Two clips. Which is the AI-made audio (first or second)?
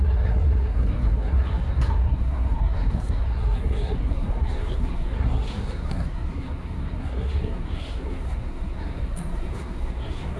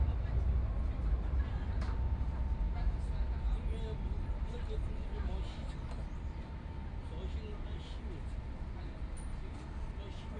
first